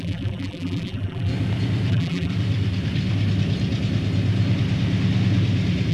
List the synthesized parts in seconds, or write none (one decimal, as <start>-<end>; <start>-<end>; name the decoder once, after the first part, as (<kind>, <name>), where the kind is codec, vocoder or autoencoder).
0.0-1.3 (vocoder, BigVGAN v2); 1.9-2.3